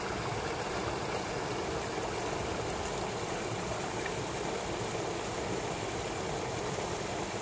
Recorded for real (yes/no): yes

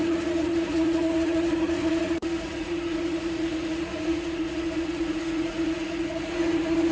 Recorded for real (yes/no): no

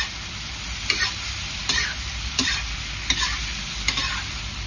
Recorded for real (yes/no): yes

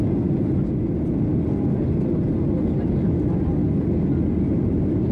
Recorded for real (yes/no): yes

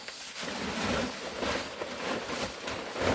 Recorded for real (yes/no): yes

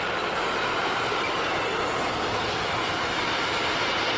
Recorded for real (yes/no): yes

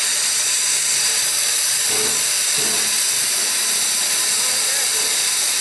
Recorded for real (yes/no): yes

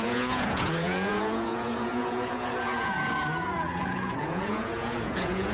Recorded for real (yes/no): no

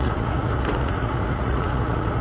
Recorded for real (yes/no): no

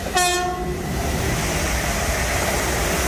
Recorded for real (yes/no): yes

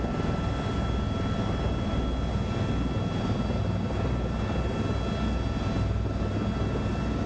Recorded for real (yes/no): yes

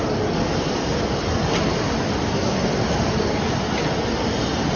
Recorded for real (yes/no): yes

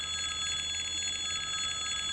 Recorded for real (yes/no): yes